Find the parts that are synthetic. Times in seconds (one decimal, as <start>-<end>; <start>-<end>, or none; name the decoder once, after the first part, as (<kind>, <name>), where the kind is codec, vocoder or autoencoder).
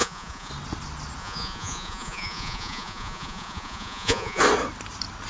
0.0-0.5 (vocoder, Vocos); 1.2-4.4